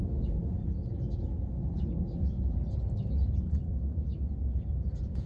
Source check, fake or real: real